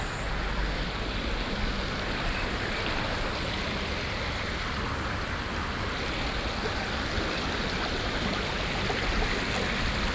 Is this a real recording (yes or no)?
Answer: yes